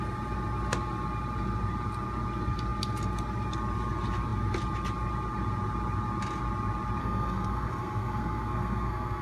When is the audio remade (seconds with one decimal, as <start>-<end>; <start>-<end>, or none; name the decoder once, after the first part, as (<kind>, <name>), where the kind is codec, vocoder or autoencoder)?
7.0-9.2 (codec, SNAC)